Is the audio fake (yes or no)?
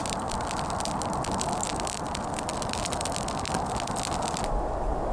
no